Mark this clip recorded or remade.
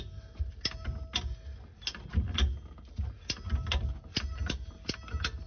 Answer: recorded